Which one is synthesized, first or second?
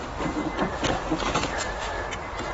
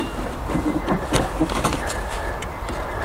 second